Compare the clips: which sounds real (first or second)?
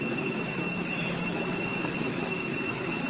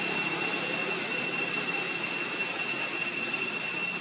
second